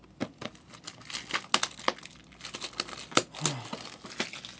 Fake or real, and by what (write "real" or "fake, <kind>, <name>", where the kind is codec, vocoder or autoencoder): real